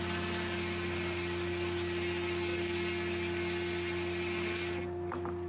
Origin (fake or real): real